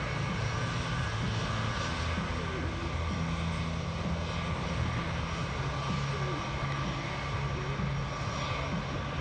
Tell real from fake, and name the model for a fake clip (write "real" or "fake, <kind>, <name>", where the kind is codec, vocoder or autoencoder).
real